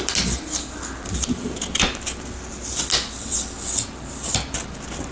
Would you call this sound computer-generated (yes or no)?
no